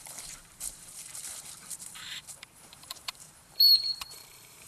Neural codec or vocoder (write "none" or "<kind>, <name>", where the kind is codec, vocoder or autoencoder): vocoder, BigVGAN v2